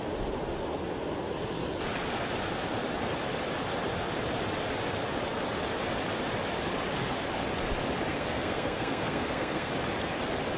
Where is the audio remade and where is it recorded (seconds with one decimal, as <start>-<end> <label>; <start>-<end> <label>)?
0.0-8.1 recorded; 8.1-9.7 remade; 9.7-10.6 recorded